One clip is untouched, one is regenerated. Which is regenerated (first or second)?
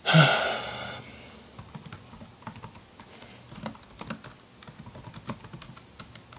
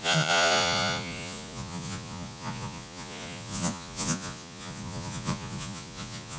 second